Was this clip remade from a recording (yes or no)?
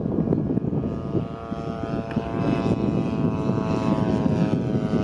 no